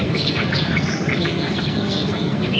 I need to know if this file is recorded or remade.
remade